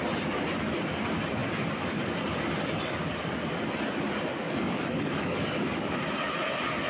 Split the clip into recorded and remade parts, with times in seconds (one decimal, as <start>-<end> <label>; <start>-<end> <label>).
0.0-4.3 recorded; 4.3-5.9 remade; 5.9-6.9 recorded